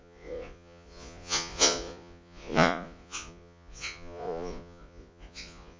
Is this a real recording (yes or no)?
no